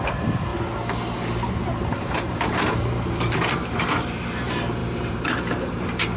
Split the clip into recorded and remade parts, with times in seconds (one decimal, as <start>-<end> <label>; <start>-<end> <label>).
0.0-0.5 remade; 0.5-1.5 recorded; 1.5-6.2 remade